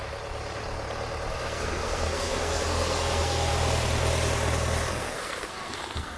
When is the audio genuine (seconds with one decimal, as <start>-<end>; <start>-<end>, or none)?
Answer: 0.0-1.3; 3.5-4.9